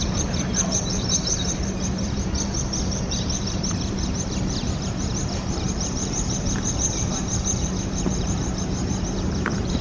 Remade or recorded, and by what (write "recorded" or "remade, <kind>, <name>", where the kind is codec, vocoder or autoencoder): remade, vocoder, BigVGAN v2